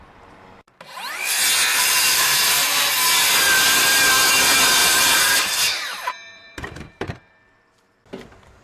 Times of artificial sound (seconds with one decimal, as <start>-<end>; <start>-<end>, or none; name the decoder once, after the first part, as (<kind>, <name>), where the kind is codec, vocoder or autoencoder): 1.7-2.9 (vocoder, BigVGAN v2); 4.8-7.3